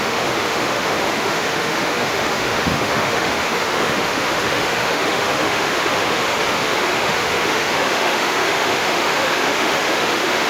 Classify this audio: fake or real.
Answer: fake